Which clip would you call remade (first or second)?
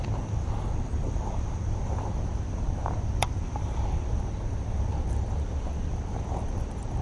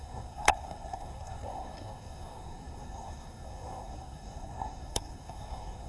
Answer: second